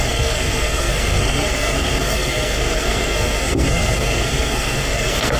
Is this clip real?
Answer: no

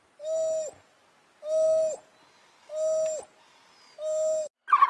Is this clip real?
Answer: yes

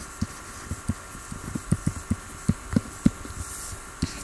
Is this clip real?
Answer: yes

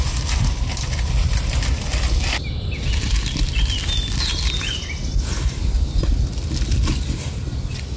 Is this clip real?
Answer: yes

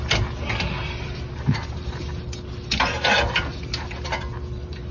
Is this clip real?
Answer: yes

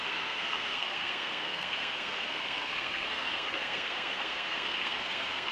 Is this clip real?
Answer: no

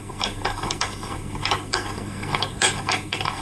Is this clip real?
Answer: no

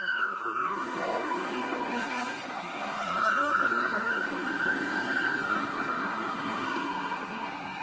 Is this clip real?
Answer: no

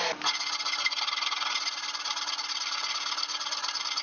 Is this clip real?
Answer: yes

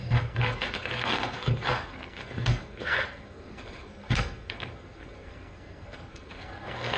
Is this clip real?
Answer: no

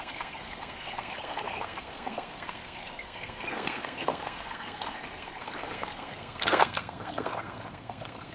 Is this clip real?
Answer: no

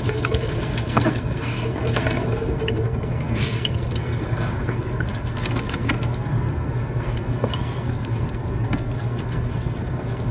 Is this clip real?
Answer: no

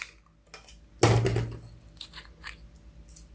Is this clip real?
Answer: yes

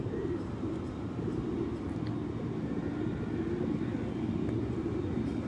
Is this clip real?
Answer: yes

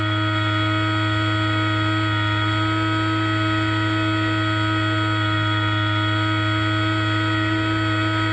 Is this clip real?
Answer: yes